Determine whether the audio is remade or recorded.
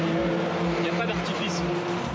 recorded